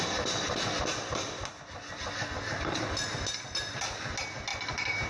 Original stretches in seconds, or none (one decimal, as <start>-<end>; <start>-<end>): 0.0-4.5